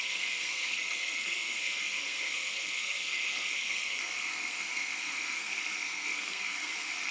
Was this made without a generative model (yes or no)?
no